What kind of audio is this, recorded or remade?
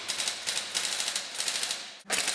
recorded